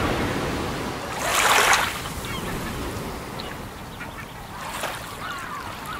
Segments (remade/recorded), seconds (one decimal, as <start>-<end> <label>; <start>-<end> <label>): 0.0-6.0 recorded